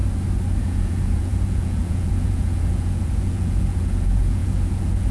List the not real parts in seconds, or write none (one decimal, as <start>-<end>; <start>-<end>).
0.6-5.1